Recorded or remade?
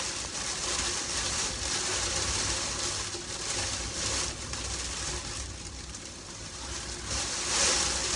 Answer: recorded